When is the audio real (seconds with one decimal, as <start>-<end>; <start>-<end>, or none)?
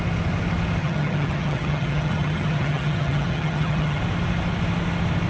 0.0-0.8; 4.0-5.3